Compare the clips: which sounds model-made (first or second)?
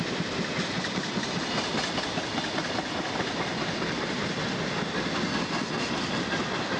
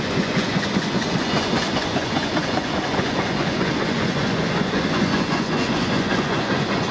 second